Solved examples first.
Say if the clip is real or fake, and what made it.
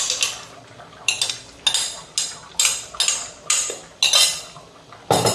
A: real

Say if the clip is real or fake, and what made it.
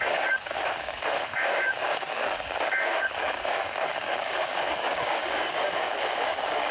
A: fake, codec, DAC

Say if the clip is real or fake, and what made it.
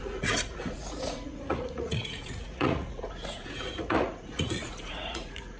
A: fake, vocoder, Vocos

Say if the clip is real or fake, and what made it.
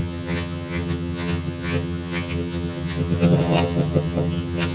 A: fake, vocoder, HiFi-GAN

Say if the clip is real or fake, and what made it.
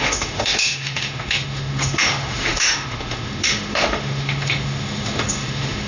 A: fake, autoencoder, DAC-VAE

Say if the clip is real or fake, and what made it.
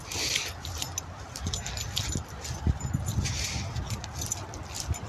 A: real